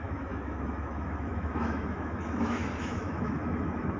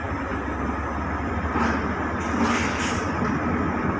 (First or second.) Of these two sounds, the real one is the second